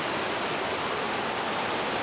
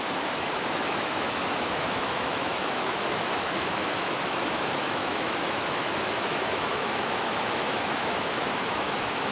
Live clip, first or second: first